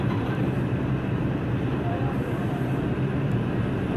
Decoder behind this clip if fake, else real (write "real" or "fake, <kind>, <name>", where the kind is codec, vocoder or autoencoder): fake, vocoder, BigVGAN v2